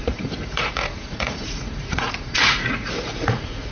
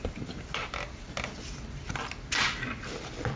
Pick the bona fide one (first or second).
second